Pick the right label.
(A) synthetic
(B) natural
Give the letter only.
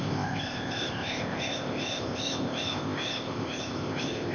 A